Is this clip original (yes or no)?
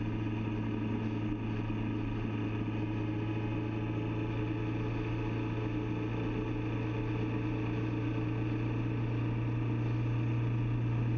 yes